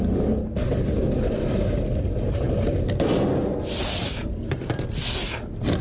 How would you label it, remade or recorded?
recorded